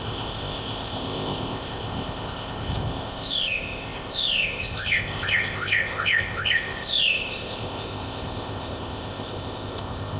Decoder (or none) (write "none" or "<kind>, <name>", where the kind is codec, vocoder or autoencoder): codec, ZipCodec